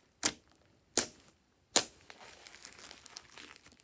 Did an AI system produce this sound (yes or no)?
no